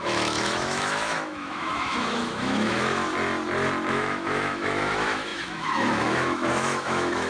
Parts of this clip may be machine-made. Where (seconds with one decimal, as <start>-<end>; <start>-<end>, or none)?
0.0-3.0; 3.9-7.3